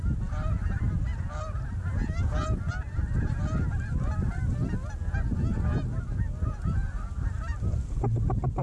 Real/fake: real